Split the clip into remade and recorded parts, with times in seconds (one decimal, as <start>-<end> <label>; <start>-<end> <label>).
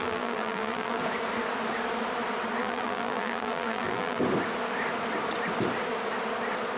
0.0-1.0 remade; 1.0-2.6 recorded; 2.6-4.2 remade; 4.2-6.8 recorded